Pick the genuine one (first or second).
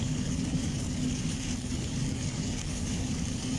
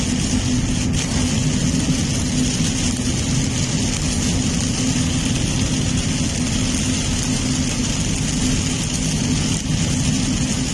second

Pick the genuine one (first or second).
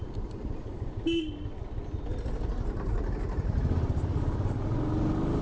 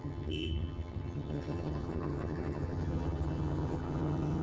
first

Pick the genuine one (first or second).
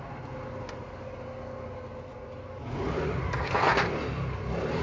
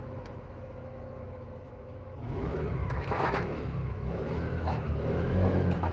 first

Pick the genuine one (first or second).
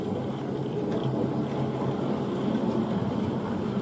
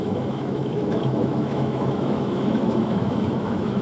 first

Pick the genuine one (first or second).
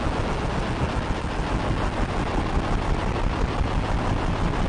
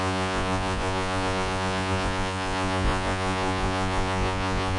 first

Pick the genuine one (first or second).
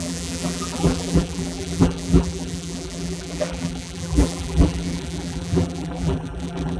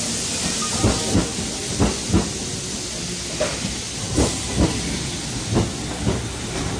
second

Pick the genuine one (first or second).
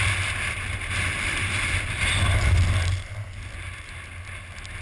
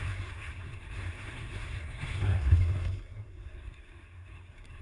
first